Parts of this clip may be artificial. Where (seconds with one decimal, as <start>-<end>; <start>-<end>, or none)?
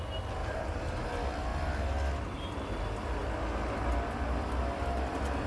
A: 0.4-1.1